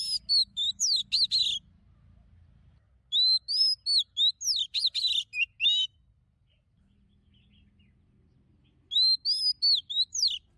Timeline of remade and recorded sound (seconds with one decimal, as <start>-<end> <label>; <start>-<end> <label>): 0.0-0.4 recorded; 0.4-1.0 remade; 1.0-10.6 recorded